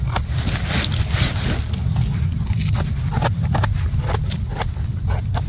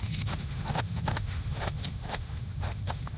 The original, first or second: first